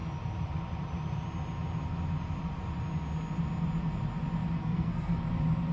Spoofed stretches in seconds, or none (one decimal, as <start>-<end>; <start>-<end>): 4.6-5.2